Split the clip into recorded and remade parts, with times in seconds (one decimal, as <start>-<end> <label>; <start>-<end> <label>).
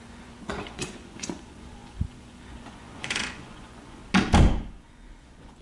0.0-4.0 remade; 4.0-4.6 recorded; 4.6-5.6 remade